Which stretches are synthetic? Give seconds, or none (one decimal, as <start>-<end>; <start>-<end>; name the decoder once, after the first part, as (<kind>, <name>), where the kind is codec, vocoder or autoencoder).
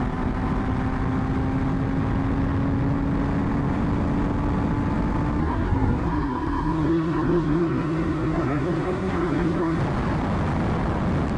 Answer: 5.4-9.8 (codec, SNAC)